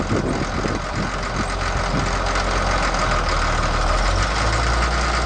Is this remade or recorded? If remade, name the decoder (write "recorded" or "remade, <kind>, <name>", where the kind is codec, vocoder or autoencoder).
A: recorded